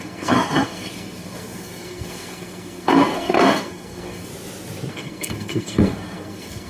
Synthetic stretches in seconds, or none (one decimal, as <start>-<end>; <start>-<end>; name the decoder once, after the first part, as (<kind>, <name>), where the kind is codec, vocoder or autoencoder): 0.0-4.3 (codec, SNAC); 4.9-6.7